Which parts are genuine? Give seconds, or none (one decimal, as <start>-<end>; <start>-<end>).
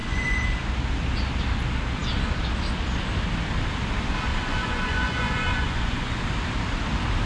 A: 0.6-4.3; 6.2-7.3